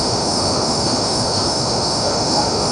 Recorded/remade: remade